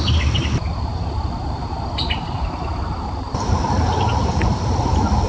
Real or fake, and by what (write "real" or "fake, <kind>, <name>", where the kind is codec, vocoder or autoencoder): fake, vocoder, BigVGAN v2